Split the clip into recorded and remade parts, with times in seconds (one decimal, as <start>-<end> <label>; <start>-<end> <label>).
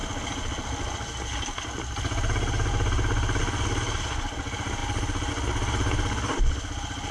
0.0-7.1 recorded